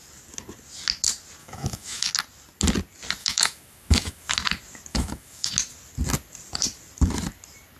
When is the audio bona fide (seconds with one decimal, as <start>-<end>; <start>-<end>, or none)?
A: 0.0-1.4; 2.1-3.2; 4.3-4.9; 5.5-7.8